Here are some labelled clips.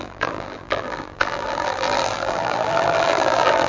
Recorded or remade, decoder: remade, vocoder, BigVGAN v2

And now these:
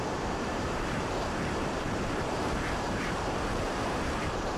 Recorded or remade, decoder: remade, vocoder, BigVGAN v2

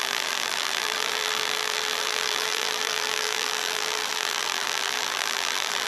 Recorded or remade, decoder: remade, vocoder, BigVGAN v2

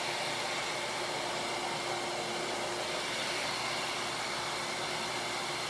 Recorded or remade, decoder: recorded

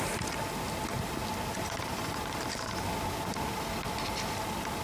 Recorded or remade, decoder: recorded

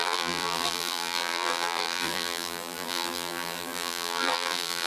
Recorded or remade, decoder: remade, vocoder, BigVGAN v2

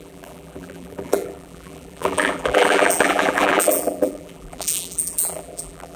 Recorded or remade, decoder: remade, vocoder, BigVGAN v2